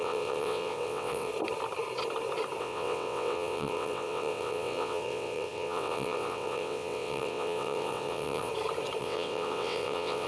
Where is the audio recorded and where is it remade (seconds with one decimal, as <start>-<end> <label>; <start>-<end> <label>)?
0.0-1.3 remade; 1.3-2.6 recorded; 2.6-8.5 remade; 8.5-9.0 recorded; 9.0-10.3 remade